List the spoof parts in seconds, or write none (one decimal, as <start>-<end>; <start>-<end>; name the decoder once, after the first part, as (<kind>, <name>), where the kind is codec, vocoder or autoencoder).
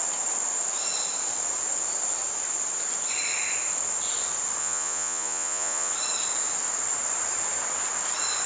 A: 4.6-5.9 (vocoder, Vocos)